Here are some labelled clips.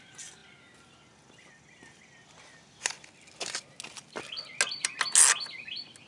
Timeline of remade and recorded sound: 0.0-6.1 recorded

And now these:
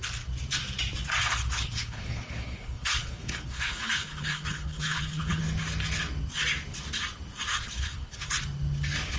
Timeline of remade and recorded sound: 0.0-1.2 recorded; 1.2-5.4 remade; 5.4-7.5 recorded; 7.5-8.4 remade; 8.4-9.2 recorded

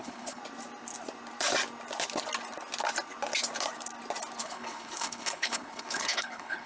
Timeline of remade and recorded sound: 0.0-0.4 remade; 0.4-4.4 recorded; 4.4-6.7 remade

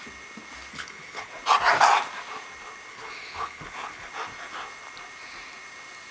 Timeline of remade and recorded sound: 0.0-0.7 recorded; 0.7-1.3 remade; 1.3-2.9 recorded; 2.9-4.1 remade; 4.1-6.1 recorded

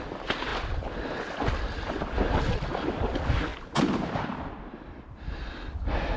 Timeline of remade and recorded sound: 0.0-6.2 recorded

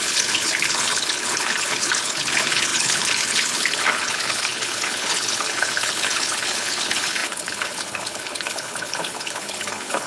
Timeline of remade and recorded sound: 0.0-10.1 remade

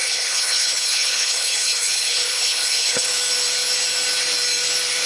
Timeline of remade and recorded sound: 0.0-3.1 remade; 3.1-5.1 recorded

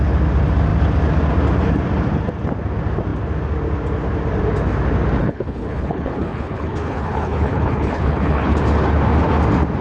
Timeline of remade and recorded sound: 0.0-5.2 recorded; 5.2-8.6 remade; 8.6-9.8 recorded